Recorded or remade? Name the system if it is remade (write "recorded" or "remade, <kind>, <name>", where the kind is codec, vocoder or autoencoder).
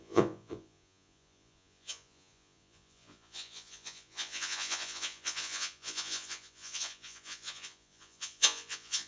remade, vocoder, Vocos